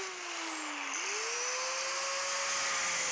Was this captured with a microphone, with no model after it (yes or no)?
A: yes